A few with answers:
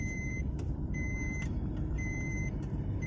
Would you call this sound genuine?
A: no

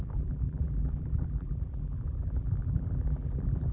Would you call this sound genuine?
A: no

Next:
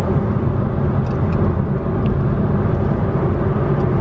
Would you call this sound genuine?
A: yes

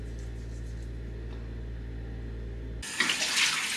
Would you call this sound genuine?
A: yes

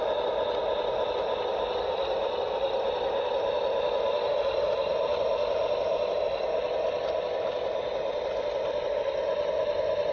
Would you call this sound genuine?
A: yes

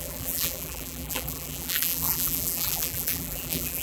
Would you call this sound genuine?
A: no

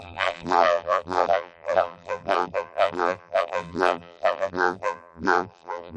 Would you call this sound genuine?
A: no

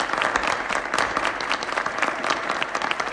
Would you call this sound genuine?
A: no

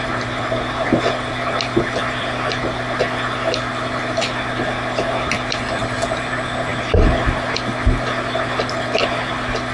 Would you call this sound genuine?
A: yes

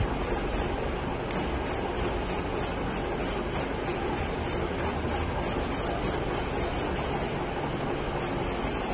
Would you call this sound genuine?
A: yes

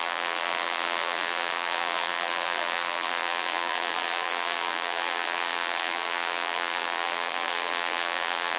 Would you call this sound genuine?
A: no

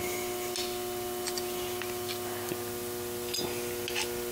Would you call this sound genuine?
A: yes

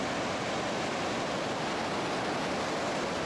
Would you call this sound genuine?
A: yes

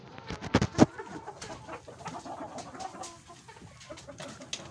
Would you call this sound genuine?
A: yes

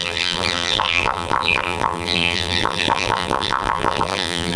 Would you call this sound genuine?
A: no